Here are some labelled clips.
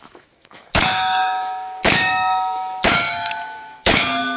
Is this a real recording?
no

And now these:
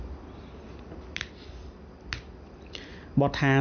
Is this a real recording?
yes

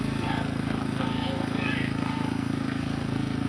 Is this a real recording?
no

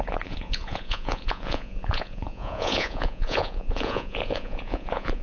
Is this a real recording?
no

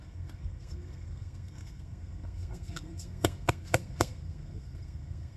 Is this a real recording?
no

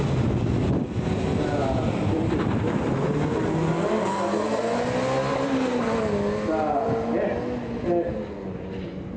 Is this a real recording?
yes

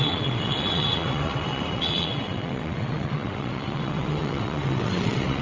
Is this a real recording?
no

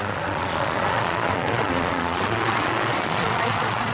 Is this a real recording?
no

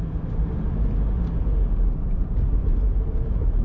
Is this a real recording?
no